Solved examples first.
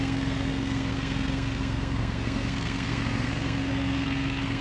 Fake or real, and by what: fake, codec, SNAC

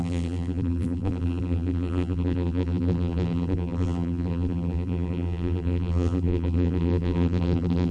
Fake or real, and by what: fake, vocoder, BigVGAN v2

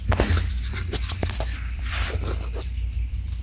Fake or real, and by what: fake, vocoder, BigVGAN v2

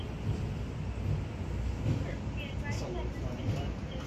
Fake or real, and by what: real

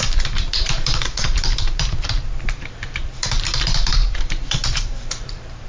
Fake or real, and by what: fake, vocoder, BigVGAN v2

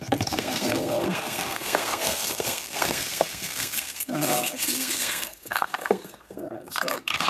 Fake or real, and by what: fake, codec, SNAC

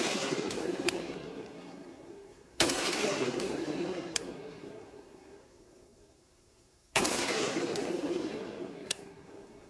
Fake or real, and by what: fake, codec, SNAC